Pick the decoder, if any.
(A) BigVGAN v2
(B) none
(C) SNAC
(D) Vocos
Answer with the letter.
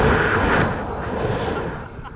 B